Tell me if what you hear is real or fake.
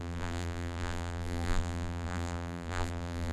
fake